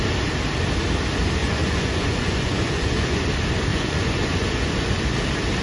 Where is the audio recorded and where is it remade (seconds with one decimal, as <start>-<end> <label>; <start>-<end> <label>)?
0.0-1.4 recorded; 1.4-3.3 remade; 3.3-3.7 recorded; 3.7-5.0 remade; 5.0-5.6 recorded